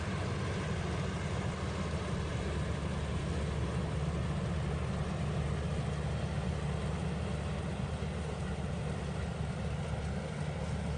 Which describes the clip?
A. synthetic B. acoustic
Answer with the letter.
B